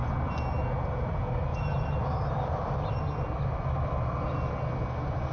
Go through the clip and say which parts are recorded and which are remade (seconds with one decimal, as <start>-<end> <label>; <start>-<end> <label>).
0.0-1.5 recorded; 1.5-4.5 remade; 4.5-5.3 recorded